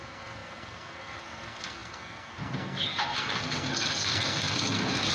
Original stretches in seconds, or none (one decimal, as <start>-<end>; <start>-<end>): none